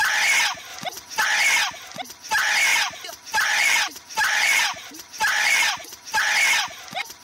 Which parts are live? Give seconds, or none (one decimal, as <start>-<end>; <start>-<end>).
0.0-2.7; 6.2-7.2